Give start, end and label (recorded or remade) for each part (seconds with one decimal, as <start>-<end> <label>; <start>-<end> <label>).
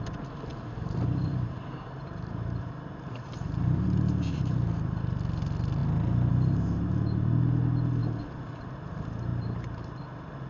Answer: 0.0-0.5 recorded; 0.5-5.0 remade; 5.0-9.3 recorded; 9.3-10.0 remade; 10.0-10.5 recorded